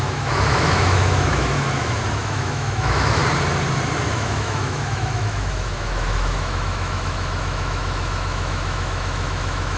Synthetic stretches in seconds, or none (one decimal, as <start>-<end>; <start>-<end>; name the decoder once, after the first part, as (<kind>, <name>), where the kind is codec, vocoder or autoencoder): 0.0-3.2 (autoencoder, DAC-VAE); 4.1-9.8